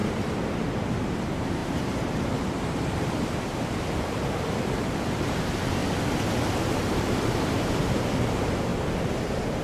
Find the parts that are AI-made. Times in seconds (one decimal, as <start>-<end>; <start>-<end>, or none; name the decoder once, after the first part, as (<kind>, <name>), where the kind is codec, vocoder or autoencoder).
0.9-5.8 (vocoder, BigVGAN v2); 6.6-8.7; 9.2-9.6